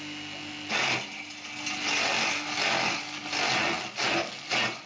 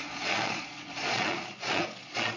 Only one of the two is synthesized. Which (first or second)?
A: second